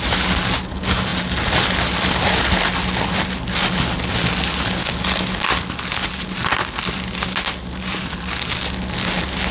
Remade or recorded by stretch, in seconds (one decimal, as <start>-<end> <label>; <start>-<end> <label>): 0.0-9.5 recorded